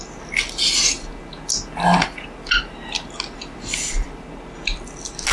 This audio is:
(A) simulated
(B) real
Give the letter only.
B